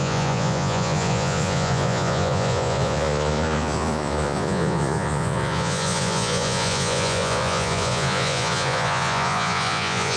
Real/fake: fake